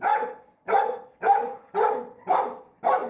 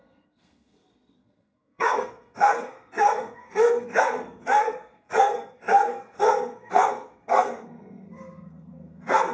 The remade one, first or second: second